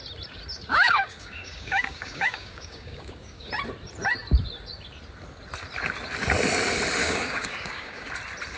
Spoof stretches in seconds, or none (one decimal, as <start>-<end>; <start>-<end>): 0.7-3.5; 7.0-8.1